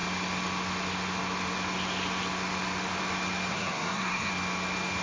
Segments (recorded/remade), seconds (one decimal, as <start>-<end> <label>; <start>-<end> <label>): 0.0-3.5 recorded; 3.5-4.3 remade; 4.3-5.0 recorded